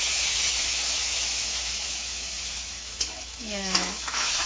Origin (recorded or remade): remade